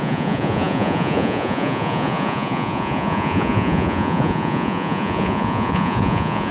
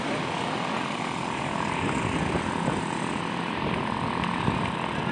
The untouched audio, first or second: second